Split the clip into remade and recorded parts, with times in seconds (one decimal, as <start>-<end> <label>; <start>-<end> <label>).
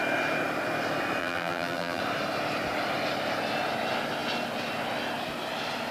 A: 0.0-1.2 recorded; 1.2-2.0 remade; 2.0-5.9 recorded